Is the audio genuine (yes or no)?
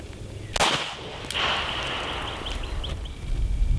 yes